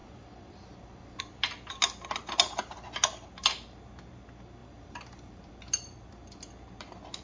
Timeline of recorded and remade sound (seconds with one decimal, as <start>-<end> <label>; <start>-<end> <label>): 0.0-4.6 recorded; 4.6-5.5 remade; 5.5-7.2 recorded